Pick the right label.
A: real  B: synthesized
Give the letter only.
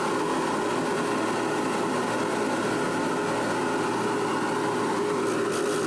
A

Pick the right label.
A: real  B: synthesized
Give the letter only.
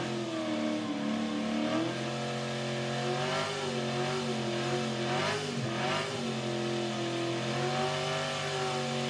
A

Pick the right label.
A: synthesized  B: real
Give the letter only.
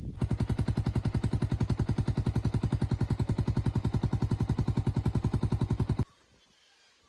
B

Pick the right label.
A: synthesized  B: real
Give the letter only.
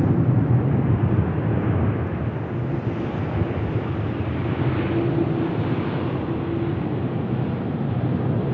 B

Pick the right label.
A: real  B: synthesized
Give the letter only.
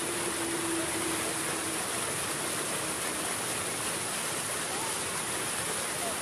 A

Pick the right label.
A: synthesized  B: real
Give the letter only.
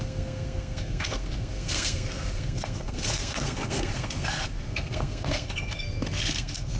A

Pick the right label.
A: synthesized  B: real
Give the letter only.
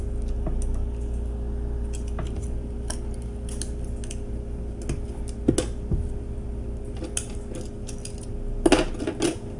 B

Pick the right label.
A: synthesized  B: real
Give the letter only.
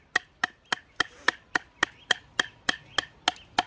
B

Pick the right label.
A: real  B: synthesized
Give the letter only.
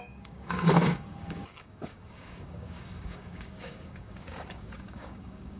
B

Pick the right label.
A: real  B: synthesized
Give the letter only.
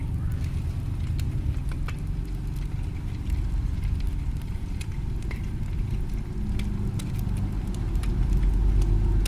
A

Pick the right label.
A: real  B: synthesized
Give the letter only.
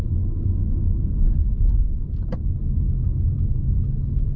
A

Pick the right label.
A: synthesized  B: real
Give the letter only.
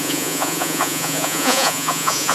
A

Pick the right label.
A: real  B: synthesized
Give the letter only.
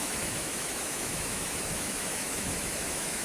B